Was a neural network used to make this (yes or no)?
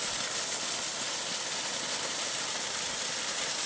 no